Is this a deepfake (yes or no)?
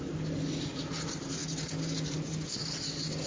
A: no